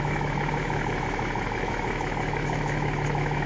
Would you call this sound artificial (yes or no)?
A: yes